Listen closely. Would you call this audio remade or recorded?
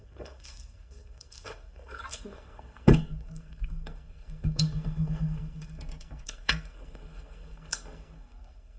remade